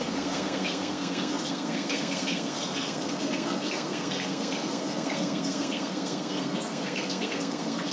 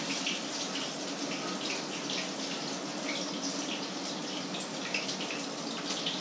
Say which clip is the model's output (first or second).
first